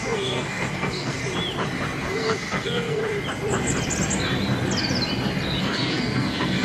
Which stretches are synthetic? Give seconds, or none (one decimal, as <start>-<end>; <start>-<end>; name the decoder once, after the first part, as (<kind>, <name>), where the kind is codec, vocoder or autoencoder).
0.0-1.2 (codec, SNAC); 2.0-3.0; 5.6-6.6